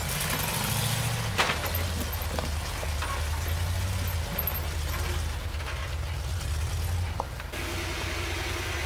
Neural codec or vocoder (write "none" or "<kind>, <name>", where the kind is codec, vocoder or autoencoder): none